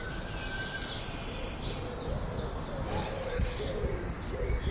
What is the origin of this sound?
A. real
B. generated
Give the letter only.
A